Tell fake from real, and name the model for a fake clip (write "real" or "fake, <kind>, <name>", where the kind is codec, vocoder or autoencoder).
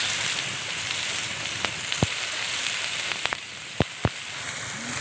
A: fake, vocoder, BigVGAN v2